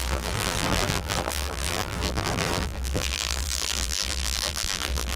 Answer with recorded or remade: remade